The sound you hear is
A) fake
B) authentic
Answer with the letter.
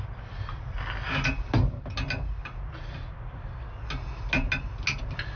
B